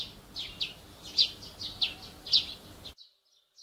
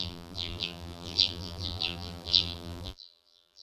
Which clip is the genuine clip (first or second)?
first